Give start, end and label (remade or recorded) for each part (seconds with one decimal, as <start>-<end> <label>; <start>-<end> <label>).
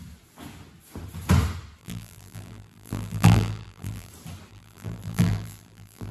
0.0-1.8 recorded; 1.8-4.1 remade; 4.1-4.5 recorded; 4.5-6.1 remade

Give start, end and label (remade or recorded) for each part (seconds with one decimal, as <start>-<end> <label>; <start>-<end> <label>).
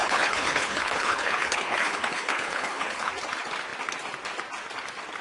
0.0-3.1 remade; 3.1-5.2 recorded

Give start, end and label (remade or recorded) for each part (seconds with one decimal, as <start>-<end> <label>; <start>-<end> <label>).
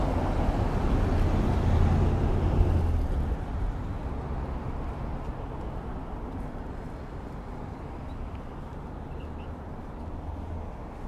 0.0-11.1 recorded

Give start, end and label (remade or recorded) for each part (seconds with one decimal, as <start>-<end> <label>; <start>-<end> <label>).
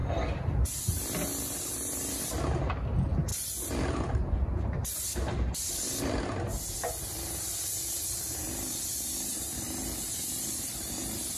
0.0-0.8 remade; 0.8-11.4 recorded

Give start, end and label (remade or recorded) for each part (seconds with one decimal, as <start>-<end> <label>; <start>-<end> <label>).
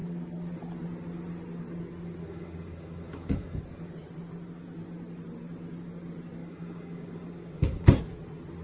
0.0-2.2 recorded; 2.2-3.6 remade; 3.6-6.4 recorded; 6.4-8.0 remade; 8.0-8.6 recorded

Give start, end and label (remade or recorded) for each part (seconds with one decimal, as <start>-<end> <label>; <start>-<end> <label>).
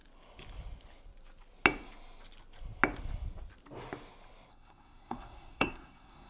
0.0-4.5 recorded; 4.5-6.3 remade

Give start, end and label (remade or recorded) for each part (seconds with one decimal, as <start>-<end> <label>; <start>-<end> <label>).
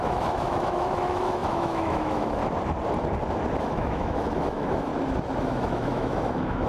0.0-2.4 remade; 2.4-3.6 recorded; 3.6-4.9 remade; 4.9-5.4 recorded; 5.4-6.7 remade